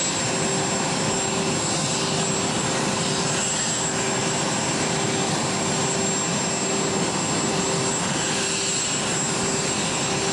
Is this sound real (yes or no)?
yes